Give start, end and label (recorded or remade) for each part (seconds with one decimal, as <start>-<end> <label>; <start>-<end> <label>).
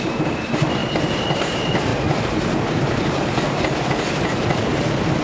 0.0-0.8 remade; 0.8-1.3 recorded; 1.3-1.9 remade; 1.9-3.0 recorded; 3.0-5.2 remade